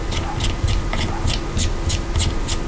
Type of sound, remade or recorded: recorded